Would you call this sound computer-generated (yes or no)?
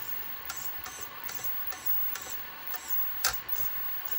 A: no